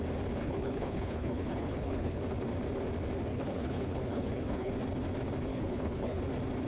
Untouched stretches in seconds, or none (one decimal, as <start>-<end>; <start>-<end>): 0.0-0.4; 2.2-3.3; 4.7-5.5; 6.2-6.7